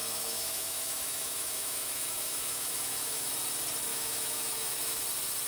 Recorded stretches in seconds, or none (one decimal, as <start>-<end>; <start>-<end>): 3.3-3.9; 5.0-5.5